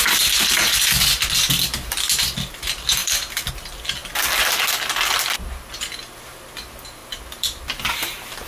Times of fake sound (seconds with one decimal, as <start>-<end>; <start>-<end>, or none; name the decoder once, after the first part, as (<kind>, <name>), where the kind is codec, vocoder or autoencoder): 3.0-3.5 (vocoder, BigVGAN v2); 7.0-7.6